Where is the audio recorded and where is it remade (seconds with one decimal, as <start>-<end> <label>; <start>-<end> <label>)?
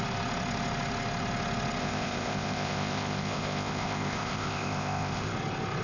0.0-1.8 recorded; 1.8-5.3 remade; 5.3-5.8 recorded